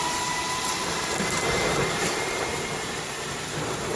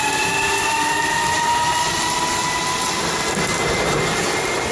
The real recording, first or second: second